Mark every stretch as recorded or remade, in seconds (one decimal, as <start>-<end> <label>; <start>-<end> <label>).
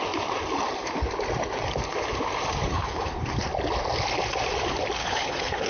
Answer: 0.0-2.7 recorded; 2.7-3.3 remade; 3.3-5.0 recorded; 5.0-5.7 remade